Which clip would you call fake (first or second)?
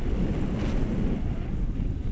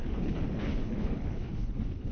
second